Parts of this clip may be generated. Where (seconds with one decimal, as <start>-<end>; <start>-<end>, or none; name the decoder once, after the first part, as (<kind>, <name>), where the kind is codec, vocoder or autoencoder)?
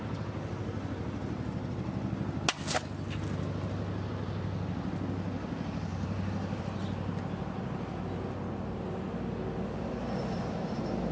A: 5.9-6.6 (vocoder, BigVGAN v2)